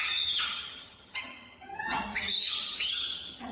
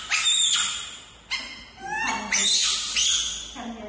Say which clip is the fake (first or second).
first